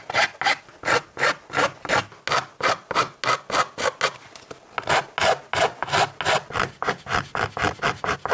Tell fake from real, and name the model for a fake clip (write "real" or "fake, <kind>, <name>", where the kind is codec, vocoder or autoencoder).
real